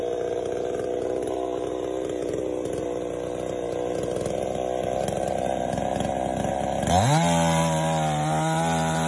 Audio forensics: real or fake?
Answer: real